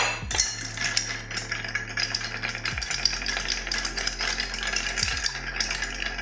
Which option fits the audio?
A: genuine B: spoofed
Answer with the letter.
A